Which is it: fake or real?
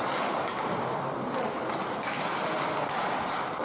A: real